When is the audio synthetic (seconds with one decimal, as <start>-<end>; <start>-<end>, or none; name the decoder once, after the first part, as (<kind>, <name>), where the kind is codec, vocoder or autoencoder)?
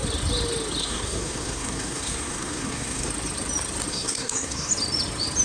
0.8-3.1 (codec, SNAC); 3.9-4.7